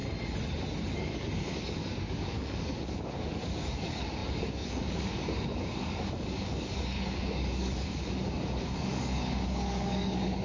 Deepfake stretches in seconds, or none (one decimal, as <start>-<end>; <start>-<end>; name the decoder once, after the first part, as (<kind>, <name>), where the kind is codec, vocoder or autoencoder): 1.0-10.4 (codec, DAC)